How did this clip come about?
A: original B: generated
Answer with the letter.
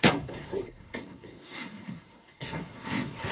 B